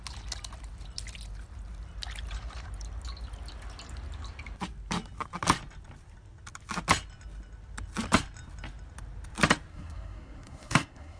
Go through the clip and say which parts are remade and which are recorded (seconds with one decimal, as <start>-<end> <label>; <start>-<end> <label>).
0.0-9.7 recorded; 9.7-11.2 remade